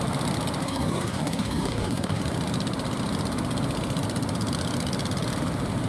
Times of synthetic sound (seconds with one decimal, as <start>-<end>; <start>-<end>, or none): 0.6-2.2